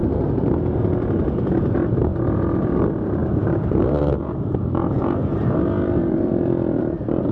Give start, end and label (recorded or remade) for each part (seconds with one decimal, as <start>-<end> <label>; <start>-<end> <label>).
0.0-1.6 recorded; 1.6-2.1 remade; 2.1-2.6 recorded; 2.6-7.3 remade